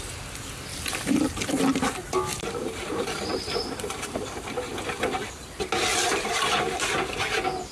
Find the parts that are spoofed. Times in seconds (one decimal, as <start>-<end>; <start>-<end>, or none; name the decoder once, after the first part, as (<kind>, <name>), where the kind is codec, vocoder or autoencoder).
0.7-1.3 (vocoder, BigVGAN v2); 2.3-5.3; 5.9-6.8